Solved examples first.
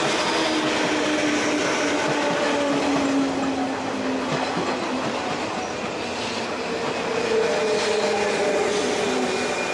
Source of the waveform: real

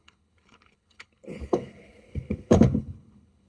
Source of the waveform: fake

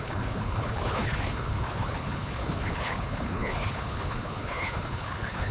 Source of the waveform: fake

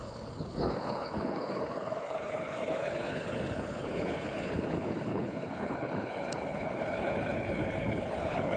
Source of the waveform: fake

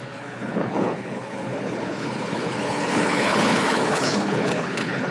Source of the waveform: fake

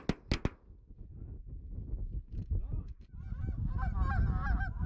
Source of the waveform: real